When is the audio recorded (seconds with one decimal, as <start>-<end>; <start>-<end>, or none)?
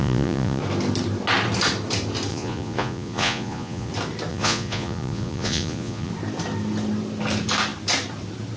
0.6-2.3; 3.9-4.3; 6.1-8.6